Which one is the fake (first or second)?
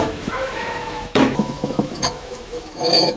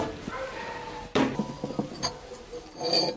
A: first